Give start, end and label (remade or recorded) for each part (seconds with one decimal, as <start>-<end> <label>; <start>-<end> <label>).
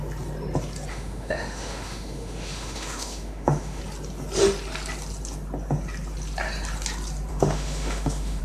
0.0-0.9 recorded; 0.9-3.8 remade; 3.8-7.3 recorded; 7.3-8.4 remade